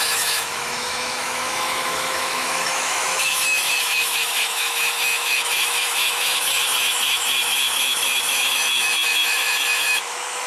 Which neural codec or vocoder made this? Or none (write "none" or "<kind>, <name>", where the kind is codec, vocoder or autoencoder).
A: autoencoder, DAC-VAE